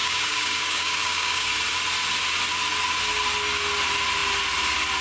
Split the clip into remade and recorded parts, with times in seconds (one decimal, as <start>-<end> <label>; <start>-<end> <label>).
0.0-1.5 remade; 1.5-5.0 recorded